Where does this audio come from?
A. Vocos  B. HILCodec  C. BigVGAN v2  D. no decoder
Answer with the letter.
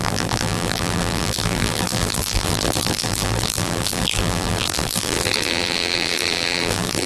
C